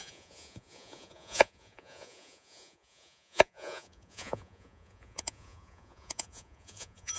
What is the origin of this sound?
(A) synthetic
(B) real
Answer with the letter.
A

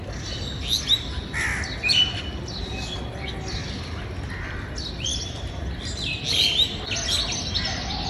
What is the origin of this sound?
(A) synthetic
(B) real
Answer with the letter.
B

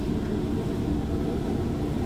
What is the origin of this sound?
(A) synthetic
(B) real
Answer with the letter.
B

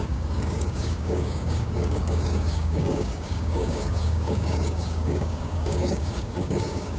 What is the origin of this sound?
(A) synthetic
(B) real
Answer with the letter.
A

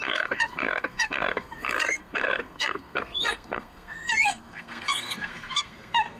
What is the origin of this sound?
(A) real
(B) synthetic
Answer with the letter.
B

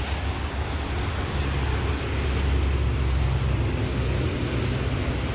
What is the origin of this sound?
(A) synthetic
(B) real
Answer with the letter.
B